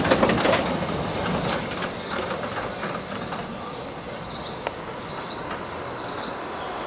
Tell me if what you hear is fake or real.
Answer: real